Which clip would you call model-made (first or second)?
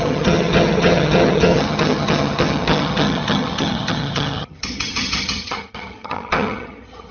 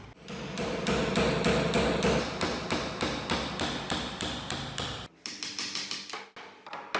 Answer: first